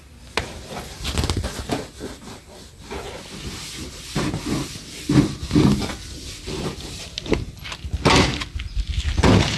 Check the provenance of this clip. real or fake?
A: real